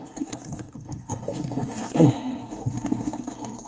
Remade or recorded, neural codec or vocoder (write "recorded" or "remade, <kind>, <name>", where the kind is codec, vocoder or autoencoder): remade, codec, SNAC